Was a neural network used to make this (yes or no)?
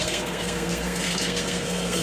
yes